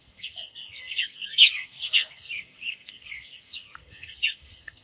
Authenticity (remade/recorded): remade